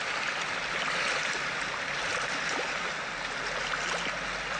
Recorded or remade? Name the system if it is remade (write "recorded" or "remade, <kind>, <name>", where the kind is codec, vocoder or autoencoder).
recorded